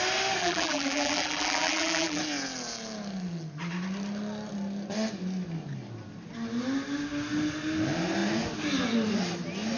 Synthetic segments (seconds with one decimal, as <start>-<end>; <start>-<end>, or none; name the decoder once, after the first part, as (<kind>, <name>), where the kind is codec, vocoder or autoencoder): 0.4-2.2 (vocoder, BigVGAN v2)